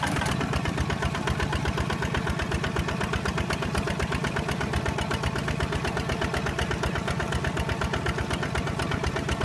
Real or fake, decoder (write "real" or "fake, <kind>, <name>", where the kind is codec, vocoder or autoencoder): real